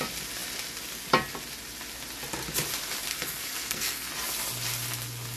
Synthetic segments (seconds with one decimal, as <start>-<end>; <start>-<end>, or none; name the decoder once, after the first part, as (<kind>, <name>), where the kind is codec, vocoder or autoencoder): 3.1-4.1 (codec, SNAC)